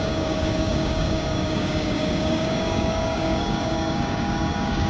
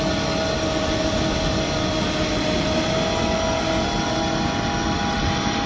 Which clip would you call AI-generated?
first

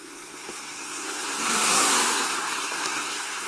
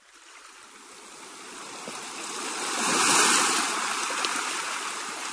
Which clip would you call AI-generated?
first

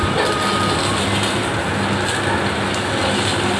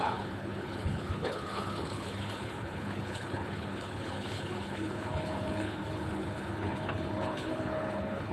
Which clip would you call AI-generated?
second